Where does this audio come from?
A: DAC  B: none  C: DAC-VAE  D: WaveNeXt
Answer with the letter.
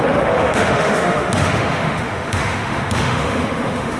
C